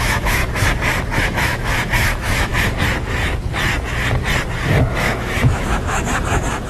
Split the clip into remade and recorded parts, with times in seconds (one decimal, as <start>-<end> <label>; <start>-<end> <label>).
0.0-0.4 remade; 0.4-1.2 recorded; 1.2-2.5 remade; 2.5-5.0 recorded; 5.0-6.7 remade